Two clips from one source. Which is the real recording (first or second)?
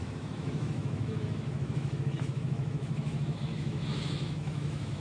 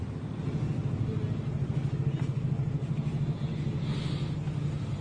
second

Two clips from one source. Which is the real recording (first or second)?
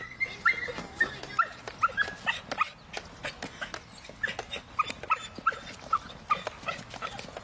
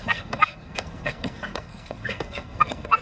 first